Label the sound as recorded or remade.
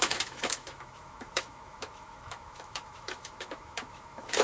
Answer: remade